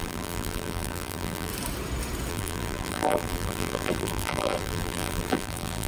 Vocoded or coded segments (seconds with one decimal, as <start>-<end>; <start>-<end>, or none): 0.0-1.5; 2.3-5.9